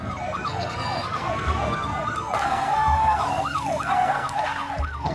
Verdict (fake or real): fake